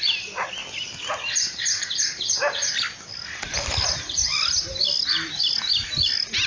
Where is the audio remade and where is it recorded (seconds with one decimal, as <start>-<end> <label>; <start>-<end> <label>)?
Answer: 0.0-6.5 recorded